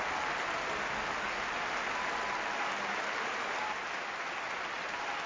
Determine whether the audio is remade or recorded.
recorded